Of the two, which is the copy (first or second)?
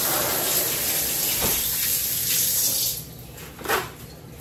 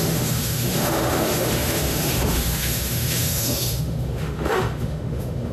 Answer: second